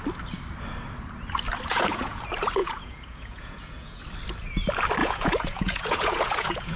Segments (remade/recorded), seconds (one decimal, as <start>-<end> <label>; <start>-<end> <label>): 0.0-1.7 recorded; 1.7-2.2 remade; 2.2-2.6 recorded; 2.6-4.0 remade; 4.0-5.0 recorded; 5.0-6.8 remade